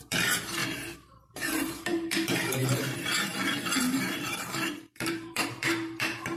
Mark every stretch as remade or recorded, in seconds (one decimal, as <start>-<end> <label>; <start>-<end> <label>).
0.0-3.3 remade; 3.3-3.8 recorded; 3.8-6.4 remade